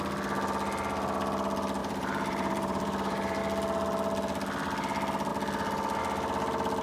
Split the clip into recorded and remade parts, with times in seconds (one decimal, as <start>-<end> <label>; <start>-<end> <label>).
0.0-1.8 recorded; 1.8-3.4 remade; 3.4-6.8 recorded